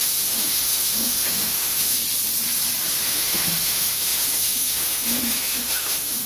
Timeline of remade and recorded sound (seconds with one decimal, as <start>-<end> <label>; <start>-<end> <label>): 0.0-2.0 remade; 2.0-3.0 recorded; 3.0-6.3 remade